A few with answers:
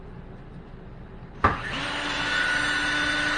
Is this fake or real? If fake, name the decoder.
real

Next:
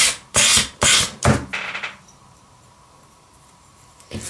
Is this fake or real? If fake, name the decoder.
fake, vocoder, BigVGAN v2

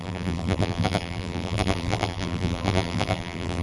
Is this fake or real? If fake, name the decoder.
fake, vocoder, BigVGAN v2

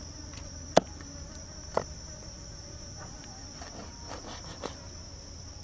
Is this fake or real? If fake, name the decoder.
fake, vocoder, BigVGAN v2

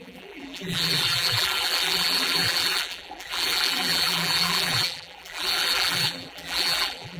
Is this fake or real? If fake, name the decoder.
fake, vocoder, BigVGAN v2